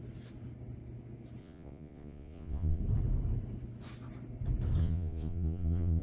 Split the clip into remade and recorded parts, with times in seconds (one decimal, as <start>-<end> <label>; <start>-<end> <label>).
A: 0.0-1.4 recorded; 1.4-2.8 remade; 2.8-4.8 recorded; 4.8-6.0 remade